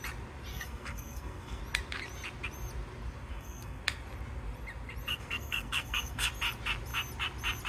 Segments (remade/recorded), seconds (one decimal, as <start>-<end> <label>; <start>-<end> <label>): 0.0-0.5 recorded; 0.5-1.6 remade; 1.6-3.3 recorded; 3.3-3.8 remade; 3.8-5.1 recorded; 5.1-6.3 remade; 6.3-7.7 recorded